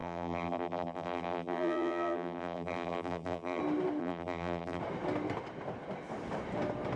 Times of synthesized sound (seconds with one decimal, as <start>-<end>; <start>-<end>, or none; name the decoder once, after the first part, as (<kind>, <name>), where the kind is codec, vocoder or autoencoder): 0.0-3.6 (vocoder, BigVGAN v2); 4.0-4.8